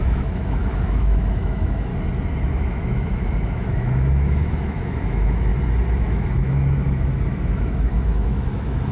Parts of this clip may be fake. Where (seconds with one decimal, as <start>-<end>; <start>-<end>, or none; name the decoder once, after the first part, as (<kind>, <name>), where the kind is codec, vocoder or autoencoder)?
0.0-1.9 (autoencoder, DAC-VAE); 2.5-5.5; 6.0-8.9